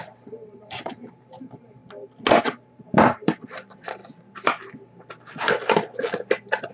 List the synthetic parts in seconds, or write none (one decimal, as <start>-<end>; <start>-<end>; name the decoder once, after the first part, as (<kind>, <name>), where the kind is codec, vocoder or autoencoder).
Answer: 0.0-1.8 (vocoder, BigVGAN v2); 2.4-4.0